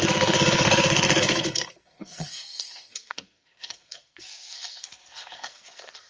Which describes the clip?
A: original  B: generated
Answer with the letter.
B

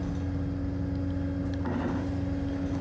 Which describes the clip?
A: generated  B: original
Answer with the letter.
B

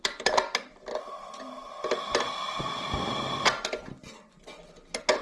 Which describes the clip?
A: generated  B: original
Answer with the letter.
B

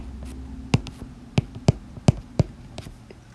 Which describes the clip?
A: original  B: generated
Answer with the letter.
A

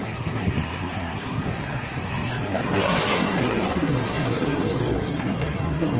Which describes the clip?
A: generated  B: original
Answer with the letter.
A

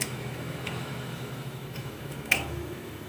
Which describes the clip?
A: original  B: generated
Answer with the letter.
B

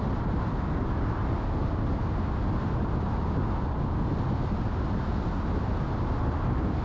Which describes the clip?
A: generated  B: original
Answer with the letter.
B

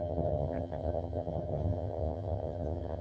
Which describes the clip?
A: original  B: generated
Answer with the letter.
B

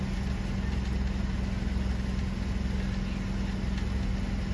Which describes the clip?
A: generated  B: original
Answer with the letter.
B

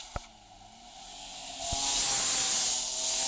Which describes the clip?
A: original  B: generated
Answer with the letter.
A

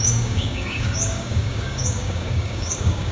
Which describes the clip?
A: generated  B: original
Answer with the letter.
A